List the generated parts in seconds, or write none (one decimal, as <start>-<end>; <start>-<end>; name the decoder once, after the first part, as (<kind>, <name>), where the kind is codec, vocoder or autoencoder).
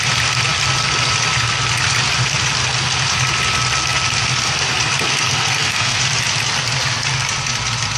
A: 5.1-6.0 (codec, SNAC)